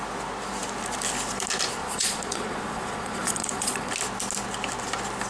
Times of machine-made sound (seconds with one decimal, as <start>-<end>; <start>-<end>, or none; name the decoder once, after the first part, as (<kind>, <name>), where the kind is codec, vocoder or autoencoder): 1.8-3.9 (vocoder, Vocos)